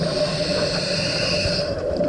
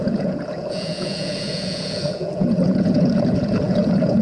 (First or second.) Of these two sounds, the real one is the first